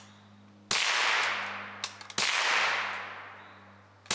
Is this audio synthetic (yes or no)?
no